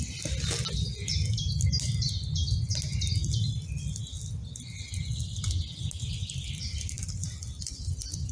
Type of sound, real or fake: real